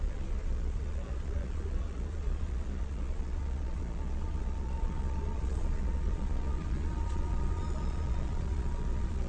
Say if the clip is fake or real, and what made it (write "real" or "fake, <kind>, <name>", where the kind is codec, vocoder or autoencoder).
fake, vocoder, Vocos